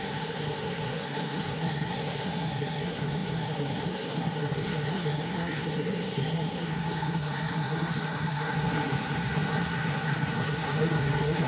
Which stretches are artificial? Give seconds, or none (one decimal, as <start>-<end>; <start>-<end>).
0.0-11.5